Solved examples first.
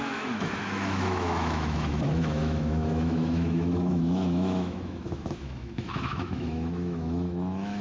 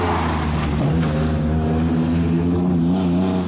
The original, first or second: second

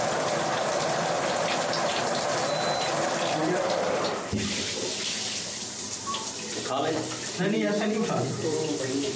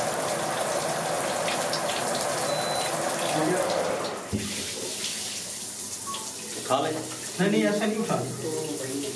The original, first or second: second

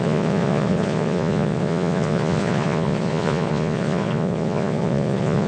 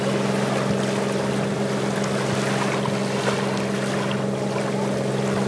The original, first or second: second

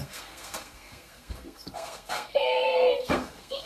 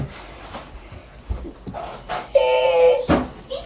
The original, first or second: second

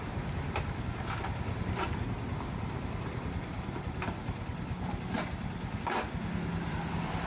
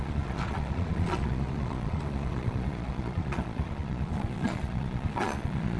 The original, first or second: first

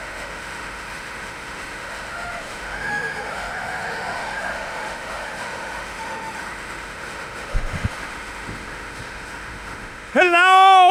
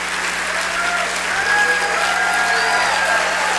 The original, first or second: second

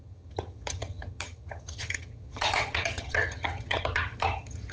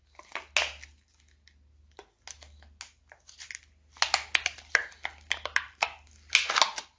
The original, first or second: second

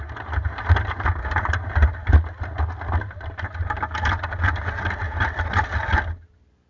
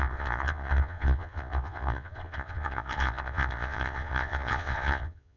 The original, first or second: first